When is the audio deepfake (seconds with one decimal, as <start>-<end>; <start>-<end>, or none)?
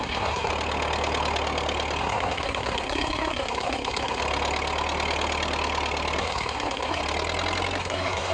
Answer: 0.0-0.5; 2.0-4.2; 6.2-7.0; 7.8-8.3